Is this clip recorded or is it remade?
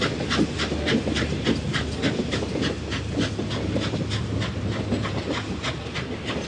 recorded